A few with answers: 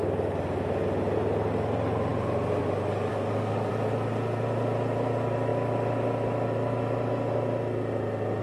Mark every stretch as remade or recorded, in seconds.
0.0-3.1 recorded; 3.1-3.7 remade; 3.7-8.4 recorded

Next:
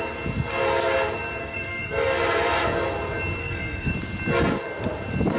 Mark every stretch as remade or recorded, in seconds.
0.0-1.4 recorded; 1.4-2.2 remade; 2.2-3.4 recorded; 3.4-3.9 remade; 3.9-5.4 recorded

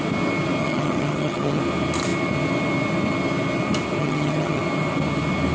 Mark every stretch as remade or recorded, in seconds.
0.0-0.6 recorded; 0.6-1.6 remade; 1.6-4.0 recorded; 4.0-4.6 remade; 4.6-5.5 recorded